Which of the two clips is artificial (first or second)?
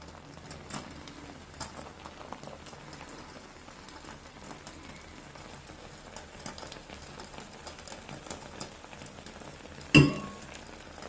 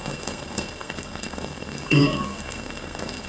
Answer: second